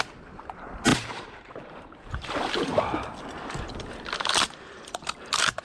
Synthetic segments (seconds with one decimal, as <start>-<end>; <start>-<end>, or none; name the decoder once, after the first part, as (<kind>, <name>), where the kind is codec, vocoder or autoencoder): 0.9-2.3 (vocoder, BigVGAN v2)